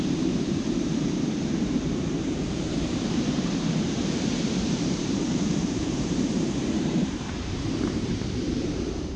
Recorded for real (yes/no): no